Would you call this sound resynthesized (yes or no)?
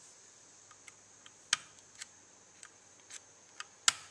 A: no